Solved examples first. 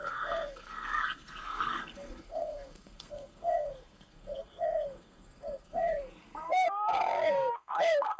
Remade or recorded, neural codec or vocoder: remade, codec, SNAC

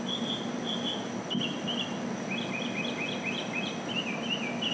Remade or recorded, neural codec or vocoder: recorded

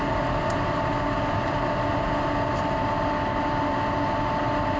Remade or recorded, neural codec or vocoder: recorded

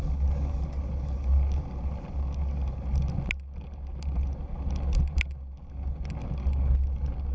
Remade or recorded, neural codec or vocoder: recorded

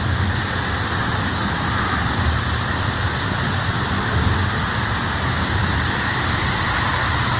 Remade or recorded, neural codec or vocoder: recorded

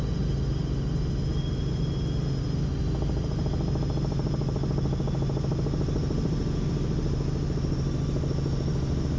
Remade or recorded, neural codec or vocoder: recorded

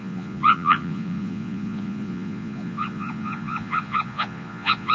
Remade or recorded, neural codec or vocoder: remade, vocoder, Vocos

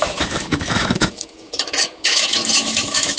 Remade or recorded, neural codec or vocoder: remade, autoencoder, DAC-VAE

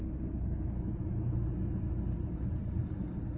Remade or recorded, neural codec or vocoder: recorded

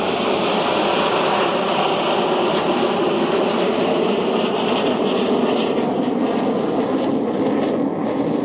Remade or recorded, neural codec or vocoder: recorded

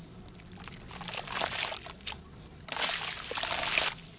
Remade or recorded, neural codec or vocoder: recorded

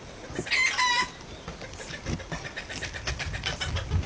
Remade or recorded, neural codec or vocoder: recorded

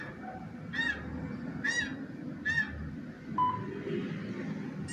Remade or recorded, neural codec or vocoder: recorded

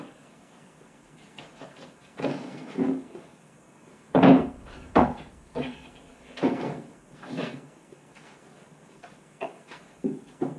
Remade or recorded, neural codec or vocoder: remade, codec, SNAC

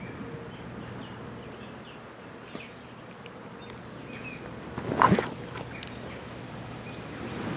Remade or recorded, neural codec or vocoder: recorded